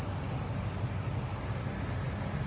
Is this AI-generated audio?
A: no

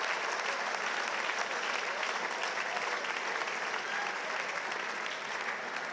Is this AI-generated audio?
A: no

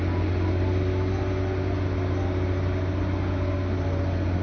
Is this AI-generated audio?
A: no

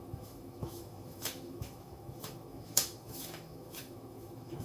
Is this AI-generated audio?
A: yes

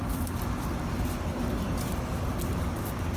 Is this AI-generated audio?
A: no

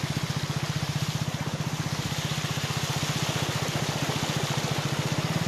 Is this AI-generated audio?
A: no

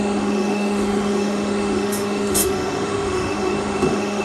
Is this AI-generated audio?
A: yes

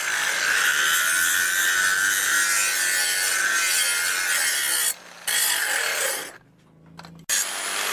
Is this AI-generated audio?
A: no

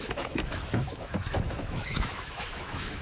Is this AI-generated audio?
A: yes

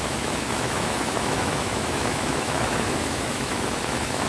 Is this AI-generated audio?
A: yes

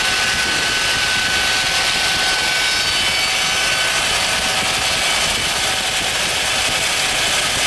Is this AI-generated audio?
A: no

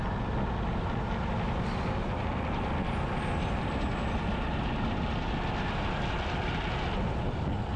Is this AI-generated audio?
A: no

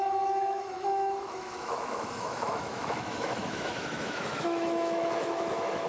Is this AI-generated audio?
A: yes